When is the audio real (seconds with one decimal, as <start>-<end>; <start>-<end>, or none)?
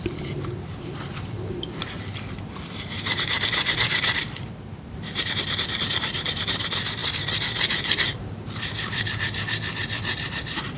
none